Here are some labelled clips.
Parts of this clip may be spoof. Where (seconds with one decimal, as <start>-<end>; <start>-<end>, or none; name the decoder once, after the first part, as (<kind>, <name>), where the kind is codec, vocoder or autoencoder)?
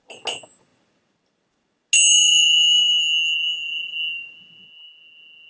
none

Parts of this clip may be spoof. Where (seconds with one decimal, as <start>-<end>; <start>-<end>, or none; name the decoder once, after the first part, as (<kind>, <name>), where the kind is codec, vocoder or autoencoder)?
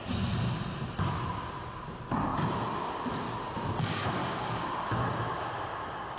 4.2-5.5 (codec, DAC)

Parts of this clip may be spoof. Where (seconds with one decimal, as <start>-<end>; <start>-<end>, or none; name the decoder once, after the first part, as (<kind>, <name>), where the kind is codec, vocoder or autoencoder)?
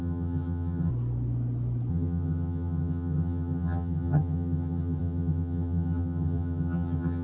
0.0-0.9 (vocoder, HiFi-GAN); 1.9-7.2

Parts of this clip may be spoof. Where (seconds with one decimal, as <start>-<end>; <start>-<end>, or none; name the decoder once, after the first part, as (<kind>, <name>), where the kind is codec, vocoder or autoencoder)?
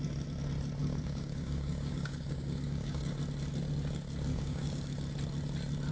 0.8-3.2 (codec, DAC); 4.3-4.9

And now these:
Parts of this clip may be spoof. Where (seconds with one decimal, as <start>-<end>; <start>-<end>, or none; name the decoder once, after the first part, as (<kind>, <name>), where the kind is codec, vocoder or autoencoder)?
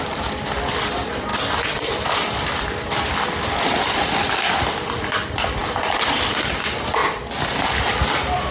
0.0-7.0 (vocoder, BigVGAN v2); 7.6-8.5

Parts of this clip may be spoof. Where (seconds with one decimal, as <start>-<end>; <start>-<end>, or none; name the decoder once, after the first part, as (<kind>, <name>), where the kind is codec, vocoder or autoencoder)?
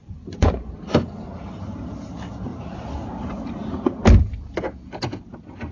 0.0-0.7 (vocoder, Vocos)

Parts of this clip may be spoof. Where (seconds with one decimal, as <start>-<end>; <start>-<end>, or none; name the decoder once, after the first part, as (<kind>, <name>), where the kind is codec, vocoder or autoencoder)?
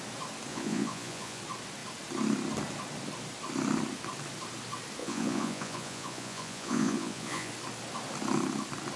0.5-1.4 (vocoder, Vocos); 5.0-7.5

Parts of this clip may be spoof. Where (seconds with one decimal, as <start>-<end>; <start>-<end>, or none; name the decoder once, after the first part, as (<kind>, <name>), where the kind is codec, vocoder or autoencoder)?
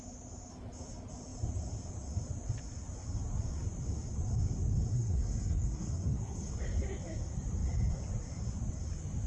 4.9-6.5 (codec, SNAC)